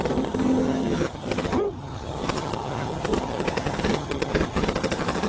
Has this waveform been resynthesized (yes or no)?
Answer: yes